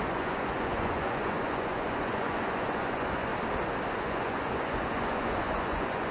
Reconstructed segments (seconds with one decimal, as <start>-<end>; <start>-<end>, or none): 0.0-3.3; 3.9-6.1